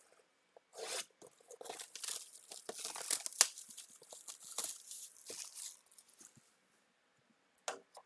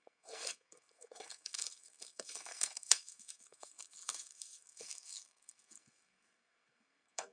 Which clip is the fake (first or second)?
second